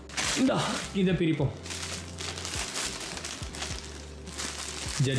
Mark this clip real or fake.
real